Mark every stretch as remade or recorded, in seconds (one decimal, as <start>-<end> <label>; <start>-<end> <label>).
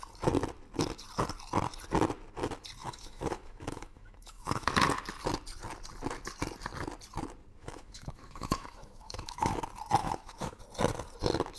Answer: 0.0-2.8 recorded; 2.8-4.7 remade; 4.7-7.6 recorded; 7.6-9.6 remade; 9.6-10.0 recorded; 10.0-10.6 remade; 10.6-11.6 recorded